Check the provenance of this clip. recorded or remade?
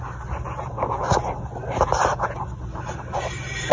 recorded